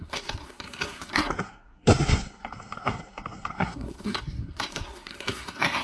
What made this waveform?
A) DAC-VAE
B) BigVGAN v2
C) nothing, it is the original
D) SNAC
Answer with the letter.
D